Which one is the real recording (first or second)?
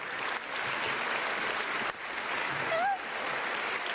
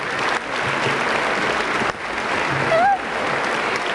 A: second